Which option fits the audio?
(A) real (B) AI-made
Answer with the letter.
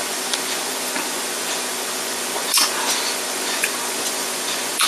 B